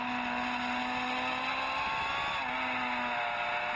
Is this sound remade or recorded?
recorded